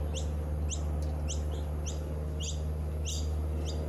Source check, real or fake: real